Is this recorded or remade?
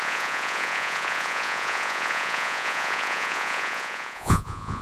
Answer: remade